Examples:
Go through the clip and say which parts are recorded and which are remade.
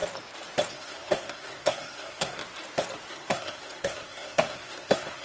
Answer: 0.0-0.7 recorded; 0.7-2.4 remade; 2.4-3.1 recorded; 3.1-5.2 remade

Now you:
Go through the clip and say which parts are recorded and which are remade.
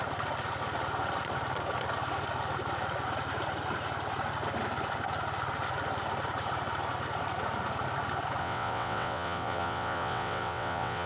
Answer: 0.0-8.4 recorded; 8.4-11.1 remade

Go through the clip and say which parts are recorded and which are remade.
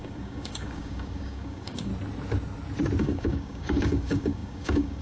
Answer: 0.0-1.9 remade; 1.9-3.0 recorded; 3.0-5.0 remade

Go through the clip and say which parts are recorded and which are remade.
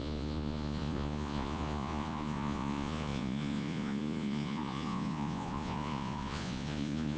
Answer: 0.0-7.2 remade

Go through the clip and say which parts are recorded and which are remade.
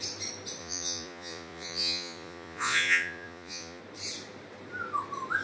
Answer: 0.0-0.6 recorded; 0.6-3.8 remade; 3.8-5.4 recorded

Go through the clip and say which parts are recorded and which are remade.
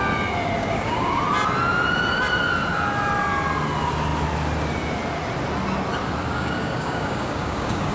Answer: 0.0-0.6 recorded; 0.6-1.2 remade; 1.2-6.3 recorded; 6.3-7.9 remade